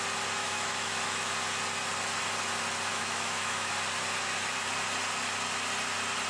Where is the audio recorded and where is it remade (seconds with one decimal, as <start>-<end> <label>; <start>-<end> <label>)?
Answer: 0.0-0.4 recorded; 0.4-1.3 remade; 1.3-2.9 recorded; 2.9-3.7 remade; 3.7-6.3 recorded